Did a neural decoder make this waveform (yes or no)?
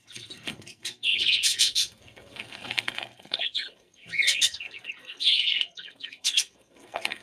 yes